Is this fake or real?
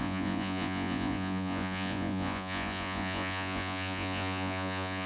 fake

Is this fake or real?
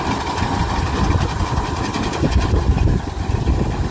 fake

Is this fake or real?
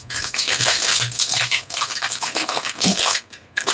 fake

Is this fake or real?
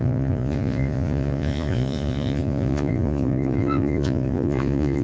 fake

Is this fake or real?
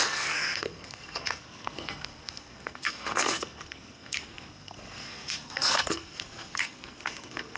fake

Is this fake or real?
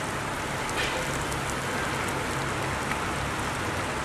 real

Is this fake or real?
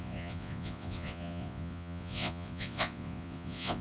fake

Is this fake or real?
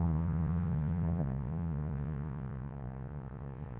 fake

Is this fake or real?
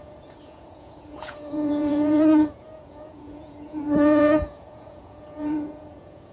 fake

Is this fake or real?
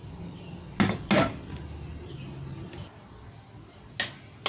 real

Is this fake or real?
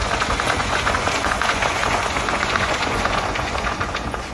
fake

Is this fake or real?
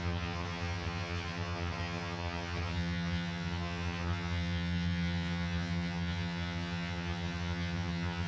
fake